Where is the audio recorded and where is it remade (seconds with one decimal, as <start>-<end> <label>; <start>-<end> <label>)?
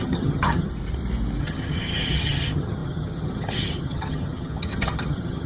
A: 0.0-0.7 remade; 0.7-1.4 recorded; 1.4-5.5 remade